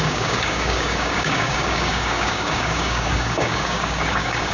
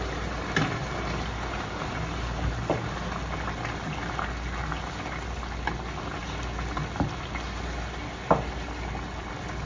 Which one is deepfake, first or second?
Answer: first